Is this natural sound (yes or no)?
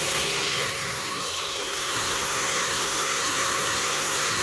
no